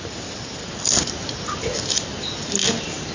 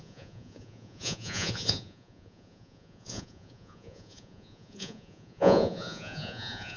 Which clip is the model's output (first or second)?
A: second